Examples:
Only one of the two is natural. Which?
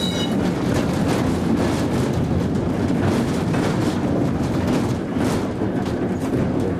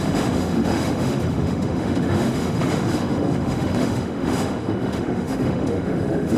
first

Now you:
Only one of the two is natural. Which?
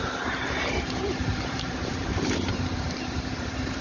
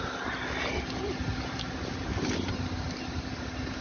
second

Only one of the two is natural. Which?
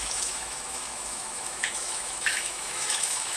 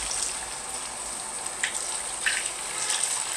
second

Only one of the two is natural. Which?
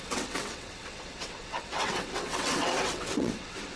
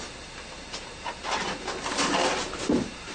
second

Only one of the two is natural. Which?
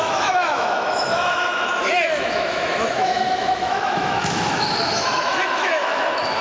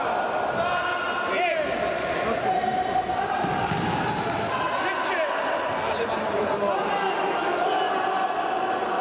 second